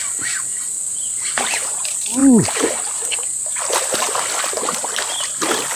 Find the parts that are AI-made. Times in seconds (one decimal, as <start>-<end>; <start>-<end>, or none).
0.9-1.8